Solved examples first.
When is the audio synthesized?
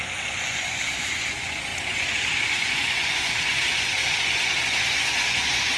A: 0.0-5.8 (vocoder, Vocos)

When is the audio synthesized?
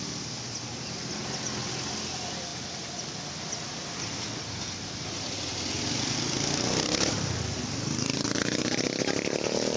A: none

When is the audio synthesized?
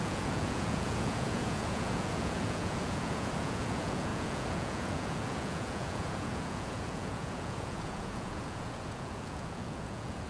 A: 0.0-10.3 (vocoder, Vocos)